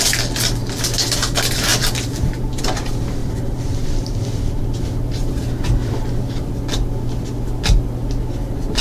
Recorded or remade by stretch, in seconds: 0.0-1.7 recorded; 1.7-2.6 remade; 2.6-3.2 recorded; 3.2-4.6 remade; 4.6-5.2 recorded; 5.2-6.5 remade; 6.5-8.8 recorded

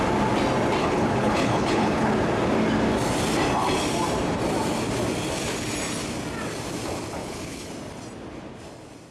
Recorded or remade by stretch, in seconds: 0.0-0.8 recorded; 0.8-2.1 remade; 2.1-7.2 recorded; 7.2-7.7 remade; 7.7-9.1 recorded

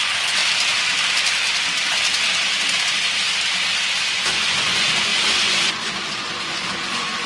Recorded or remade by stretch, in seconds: 0.0-0.4 remade; 0.4-4.1 recorded; 4.1-7.3 remade

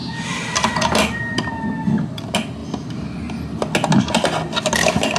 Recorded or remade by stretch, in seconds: 0.0-5.2 recorded

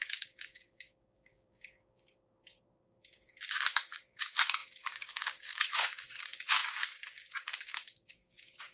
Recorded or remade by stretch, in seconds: 0.0-8.7 remade

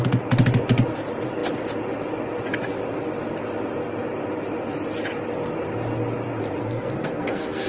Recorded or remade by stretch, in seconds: 0.0-6.6 recorded; 6.6-7.7 remade

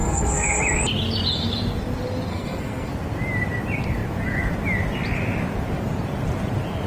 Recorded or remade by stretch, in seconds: 0.0-0.6 remade; 0.6-2.3 recorded; 2.3-2.9 remade; 2.9-6.9 recorded